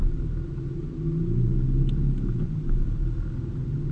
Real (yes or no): yes